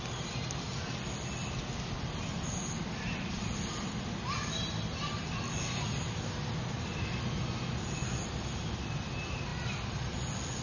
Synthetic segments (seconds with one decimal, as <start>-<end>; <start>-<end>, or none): none